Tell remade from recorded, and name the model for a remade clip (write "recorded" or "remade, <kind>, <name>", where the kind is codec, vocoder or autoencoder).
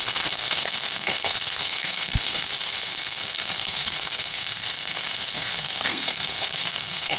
remade, codec, SNAC